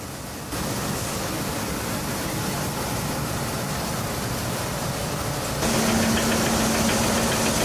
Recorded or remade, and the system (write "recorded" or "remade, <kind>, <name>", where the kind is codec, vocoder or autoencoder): recorded